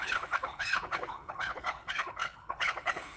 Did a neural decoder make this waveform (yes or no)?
yes